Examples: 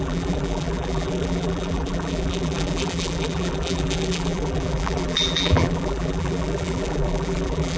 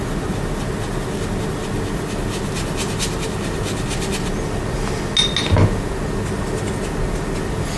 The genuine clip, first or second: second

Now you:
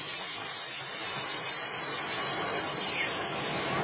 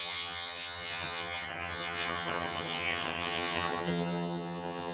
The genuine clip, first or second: first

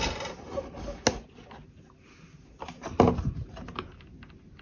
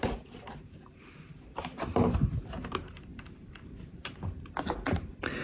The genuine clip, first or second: first